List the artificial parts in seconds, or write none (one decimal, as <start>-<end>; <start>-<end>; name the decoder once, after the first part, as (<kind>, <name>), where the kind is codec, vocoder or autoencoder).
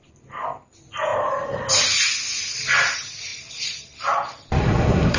4.6-5.2 (codec, SNAC)